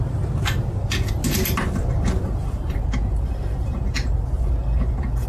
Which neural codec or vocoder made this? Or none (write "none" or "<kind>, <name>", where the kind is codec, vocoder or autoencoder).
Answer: none